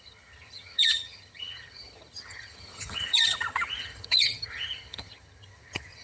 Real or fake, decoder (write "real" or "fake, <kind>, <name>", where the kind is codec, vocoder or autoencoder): fake, vocoder, HiFi-GAN